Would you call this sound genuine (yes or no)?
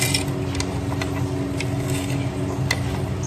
yes